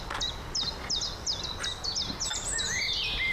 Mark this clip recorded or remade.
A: recorded